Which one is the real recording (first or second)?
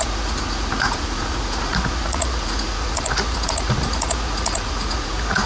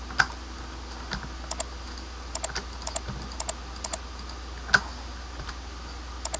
second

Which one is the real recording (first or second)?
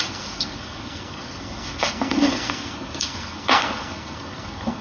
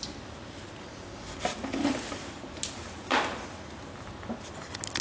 second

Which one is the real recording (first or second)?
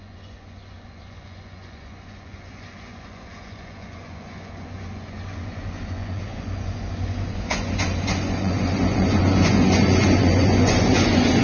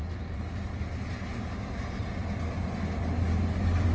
second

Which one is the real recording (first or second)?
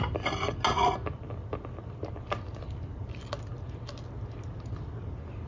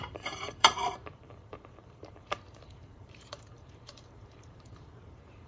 first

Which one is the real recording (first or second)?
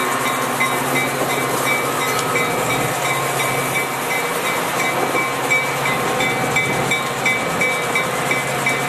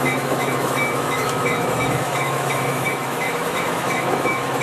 first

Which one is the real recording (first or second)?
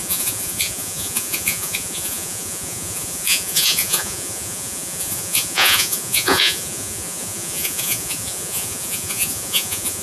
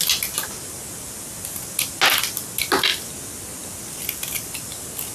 second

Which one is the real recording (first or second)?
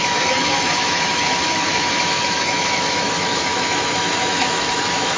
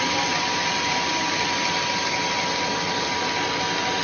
second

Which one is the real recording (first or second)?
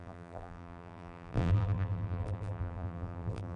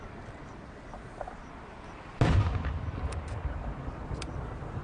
second